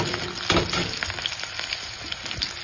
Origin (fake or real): real